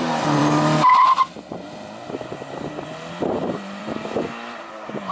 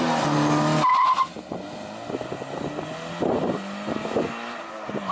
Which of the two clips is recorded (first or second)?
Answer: second